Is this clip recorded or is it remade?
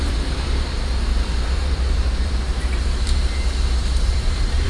remade